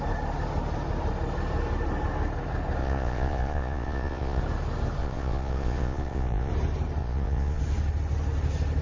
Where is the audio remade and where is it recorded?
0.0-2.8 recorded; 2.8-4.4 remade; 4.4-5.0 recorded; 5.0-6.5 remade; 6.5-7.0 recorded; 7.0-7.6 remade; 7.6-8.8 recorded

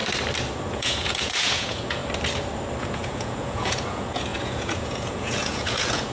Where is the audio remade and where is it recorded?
0.0-0.7 recorded; 0.7-2.0 remade; 2.0-2.8 recorded; 2.8-6.1 remade

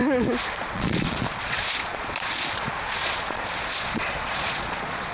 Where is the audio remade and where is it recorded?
0.0-0.6 recorded; 0.6-5.1 remade

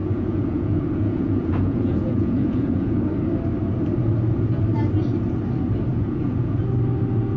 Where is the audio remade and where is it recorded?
0.0-3.0 remade; 3.0-5.9 recorded; 5.9-6.6 remade; 6.6-7.4 recorded

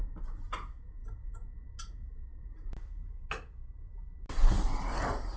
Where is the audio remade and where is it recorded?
0.0-5.4 recorded

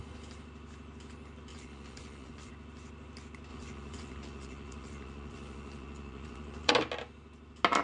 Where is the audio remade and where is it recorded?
0.0-1.5 recorded; 1.5-2.5 remade; 2.5-3.5 recorded; 3.5-6.7 remade; 6.7-7.8 recorded

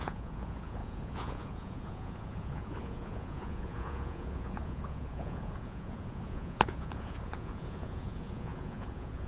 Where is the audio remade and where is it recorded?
0.0-9.3 remade